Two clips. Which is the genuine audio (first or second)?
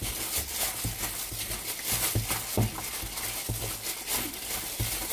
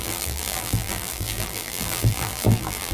first